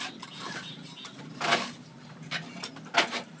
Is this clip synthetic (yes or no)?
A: no